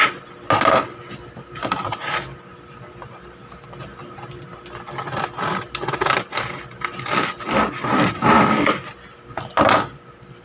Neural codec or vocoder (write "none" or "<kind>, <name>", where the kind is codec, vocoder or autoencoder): none